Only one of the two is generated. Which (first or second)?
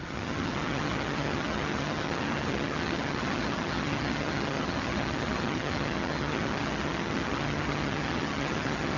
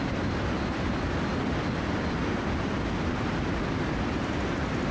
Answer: first